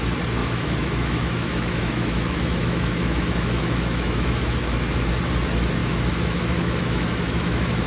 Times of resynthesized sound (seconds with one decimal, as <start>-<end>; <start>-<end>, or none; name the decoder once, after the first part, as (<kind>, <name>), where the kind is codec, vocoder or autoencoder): 0.4-5.1 (autoencoder, DAC-VAE); 5.8-7.9